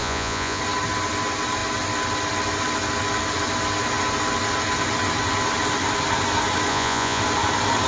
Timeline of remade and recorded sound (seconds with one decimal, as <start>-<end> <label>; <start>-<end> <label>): 0.0-0.6 remade; 0.6-6.7 recorded; 6.7-7.2 remade; 7.2-7.9 recorded